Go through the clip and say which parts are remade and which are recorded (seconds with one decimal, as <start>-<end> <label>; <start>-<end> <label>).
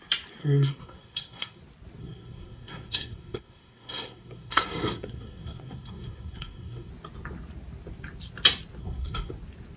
0.0-0.4 recorded; 0.4-1.6 remade; 1.6-2.0 recorded; 2.0-6.9 remade; 6.9-8.8 recorded; 8.8-9.3 remade; 9.3-9.8 recorded